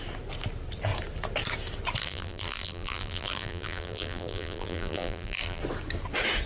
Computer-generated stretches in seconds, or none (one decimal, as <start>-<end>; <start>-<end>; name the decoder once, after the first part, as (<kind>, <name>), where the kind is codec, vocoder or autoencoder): 2.0-5.6 (vocoder, BigVGAN v2)